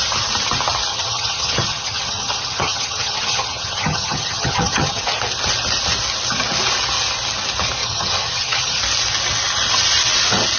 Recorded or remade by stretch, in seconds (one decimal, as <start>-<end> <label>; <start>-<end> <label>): 0.0-0.9 recorded; 0.9-5.0 remade; 5.0-7.8 recorded; 7.8-8.8 remade; 8.8-10.6 recorded